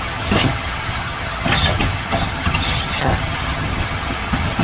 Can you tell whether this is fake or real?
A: fake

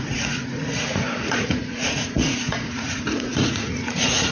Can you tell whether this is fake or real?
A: fake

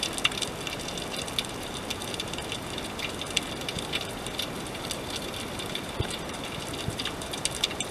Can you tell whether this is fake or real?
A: real